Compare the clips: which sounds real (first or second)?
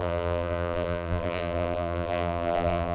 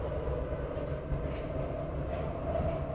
second